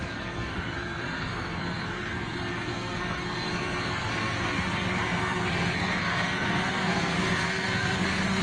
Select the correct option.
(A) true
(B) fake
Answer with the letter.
B